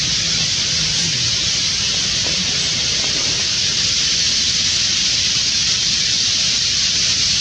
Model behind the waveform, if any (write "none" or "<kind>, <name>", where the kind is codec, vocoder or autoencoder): none